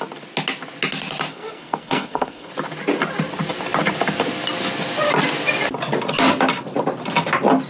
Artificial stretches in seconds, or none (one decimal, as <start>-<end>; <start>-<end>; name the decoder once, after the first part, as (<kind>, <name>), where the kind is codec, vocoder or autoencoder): 1.3-2.5 (codec, SNAC)